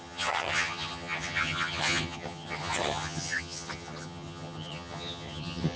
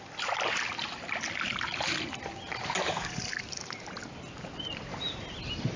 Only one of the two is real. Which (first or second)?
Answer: second